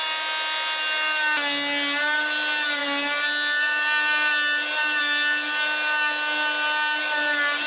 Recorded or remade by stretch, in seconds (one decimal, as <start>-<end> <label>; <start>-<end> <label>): 0.0-7.7 recorded